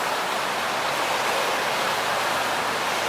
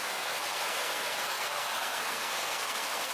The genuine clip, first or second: first